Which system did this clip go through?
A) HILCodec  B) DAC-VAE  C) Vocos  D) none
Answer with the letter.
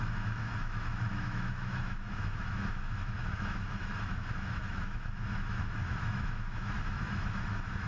B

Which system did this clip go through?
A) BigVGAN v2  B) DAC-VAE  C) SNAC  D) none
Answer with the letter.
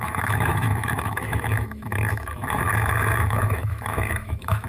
B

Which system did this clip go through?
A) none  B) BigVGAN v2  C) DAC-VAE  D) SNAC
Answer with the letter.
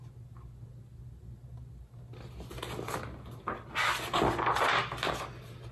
A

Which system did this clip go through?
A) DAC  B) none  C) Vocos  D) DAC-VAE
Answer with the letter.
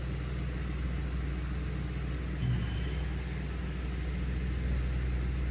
B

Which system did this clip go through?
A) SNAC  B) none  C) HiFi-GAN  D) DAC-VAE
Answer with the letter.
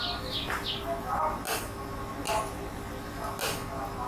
B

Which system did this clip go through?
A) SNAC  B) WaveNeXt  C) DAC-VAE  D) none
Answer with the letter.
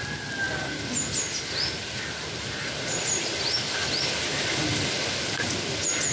D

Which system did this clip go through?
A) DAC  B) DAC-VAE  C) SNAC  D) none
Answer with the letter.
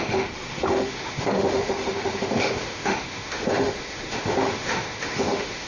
B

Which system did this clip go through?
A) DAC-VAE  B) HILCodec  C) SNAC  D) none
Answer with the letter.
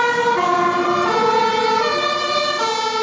D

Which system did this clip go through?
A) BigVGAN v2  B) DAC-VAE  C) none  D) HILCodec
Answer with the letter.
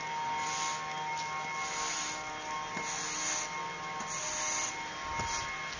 C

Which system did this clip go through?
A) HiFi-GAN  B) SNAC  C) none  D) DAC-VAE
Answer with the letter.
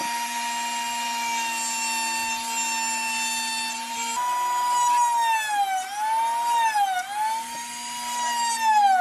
C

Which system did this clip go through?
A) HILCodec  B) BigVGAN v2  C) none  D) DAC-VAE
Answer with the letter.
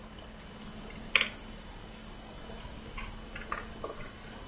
C